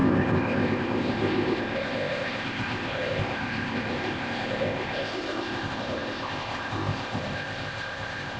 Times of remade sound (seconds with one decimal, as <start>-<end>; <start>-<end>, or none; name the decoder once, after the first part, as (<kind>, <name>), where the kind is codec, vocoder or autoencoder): 0.0-8.4 (codec, ZipCodec)